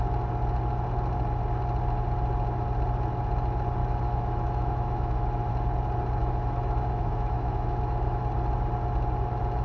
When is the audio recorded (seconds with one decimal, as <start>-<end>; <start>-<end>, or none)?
0.0-3.8; 5.5-6.2; 8.2-9.6